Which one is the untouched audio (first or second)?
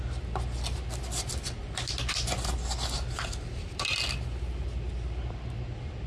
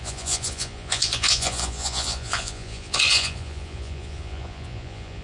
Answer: first